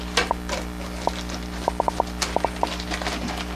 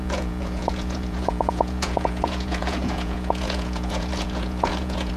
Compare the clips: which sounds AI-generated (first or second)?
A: second